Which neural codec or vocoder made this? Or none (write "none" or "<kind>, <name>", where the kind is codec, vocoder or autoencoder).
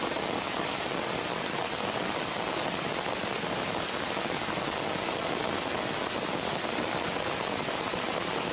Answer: none